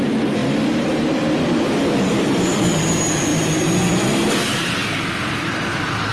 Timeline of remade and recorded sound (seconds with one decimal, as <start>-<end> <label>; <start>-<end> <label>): 0.0-3.3 remade; 3.3-3.9 recorded; 3.9-4.8 remade; 4.8-5.6 recorded; 5.6-6.1 remade